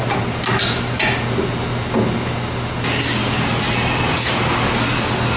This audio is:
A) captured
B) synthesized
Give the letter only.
A